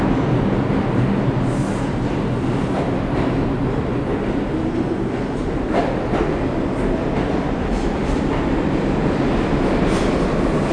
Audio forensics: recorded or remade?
recorded